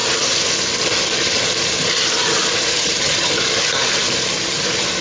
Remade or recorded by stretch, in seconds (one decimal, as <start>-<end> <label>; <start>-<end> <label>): 0.0-2.7 recorded; 2.7-3.4 remade; 3.4-5.0 recorded